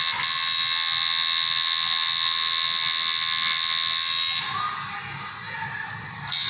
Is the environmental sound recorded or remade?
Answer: recorded